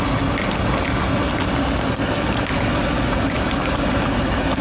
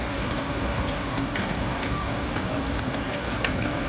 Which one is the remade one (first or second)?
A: second